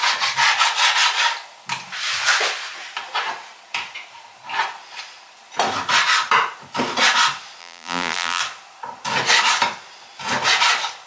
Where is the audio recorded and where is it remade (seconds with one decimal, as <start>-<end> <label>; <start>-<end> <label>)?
0.0-7.6 recorded; 7.6-8.4 remade; 8.4-11.1 recorded